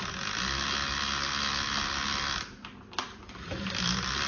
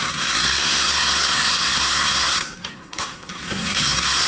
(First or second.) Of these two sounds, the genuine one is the first